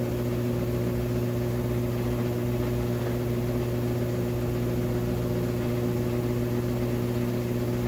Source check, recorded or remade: recorded